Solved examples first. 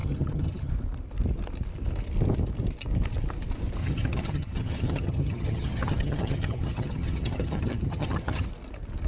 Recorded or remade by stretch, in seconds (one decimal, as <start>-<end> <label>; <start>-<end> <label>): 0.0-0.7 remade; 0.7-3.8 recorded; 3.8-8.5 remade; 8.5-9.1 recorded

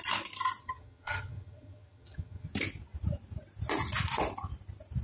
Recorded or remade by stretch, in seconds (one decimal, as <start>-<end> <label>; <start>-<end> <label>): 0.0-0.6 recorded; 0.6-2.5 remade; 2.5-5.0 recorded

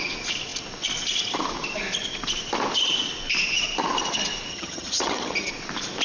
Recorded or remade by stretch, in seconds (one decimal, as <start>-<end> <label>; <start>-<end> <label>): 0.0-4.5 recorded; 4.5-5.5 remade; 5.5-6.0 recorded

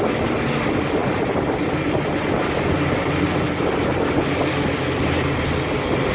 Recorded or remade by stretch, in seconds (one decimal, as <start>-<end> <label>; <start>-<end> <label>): 0.0-6.1 recorded

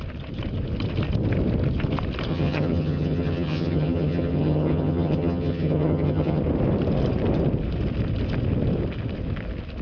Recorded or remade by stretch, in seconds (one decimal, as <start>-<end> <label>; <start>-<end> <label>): 0.0-2.3 recorded; 2.3-6.4 remade; 6.4-9.8 recorded

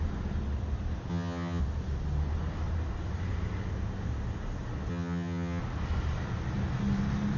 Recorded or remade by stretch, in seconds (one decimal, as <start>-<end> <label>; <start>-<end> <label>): 0.0-1.1 recorded; 1.1-1.6 remade; 1.6-4.9 recorded; 4.9-5.6 remade; 5.6-7.4 recorded

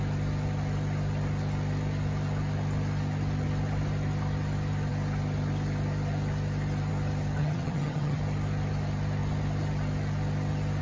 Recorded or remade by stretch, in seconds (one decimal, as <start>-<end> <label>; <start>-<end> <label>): 0.0-7.4 recorded; 7.4-8.2 remade; 8.2-10.8 recorded